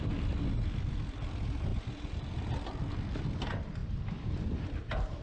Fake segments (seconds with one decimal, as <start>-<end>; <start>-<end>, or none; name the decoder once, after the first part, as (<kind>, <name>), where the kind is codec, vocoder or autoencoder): 3.8-4.8 (vocoder, BigVGAN v2)